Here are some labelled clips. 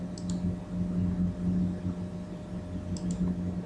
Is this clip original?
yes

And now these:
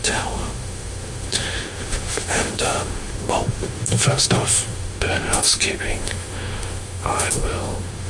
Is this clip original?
no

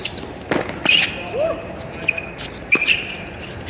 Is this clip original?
yes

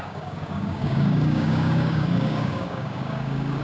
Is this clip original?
no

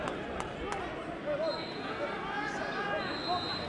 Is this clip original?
yes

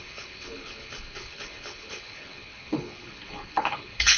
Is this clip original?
no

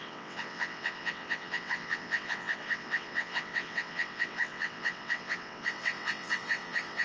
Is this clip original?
no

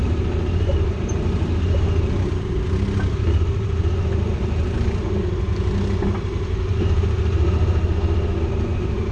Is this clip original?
yes